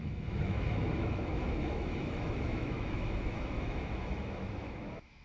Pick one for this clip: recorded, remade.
remade